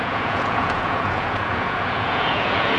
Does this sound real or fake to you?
fake